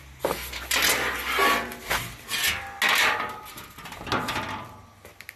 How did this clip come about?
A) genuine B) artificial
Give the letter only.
A